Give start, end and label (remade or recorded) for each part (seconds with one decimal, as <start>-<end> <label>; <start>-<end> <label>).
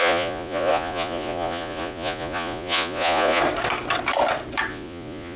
0.0-3.4 remade; 3.4-4.7 recorded; 4.7-5.4 remade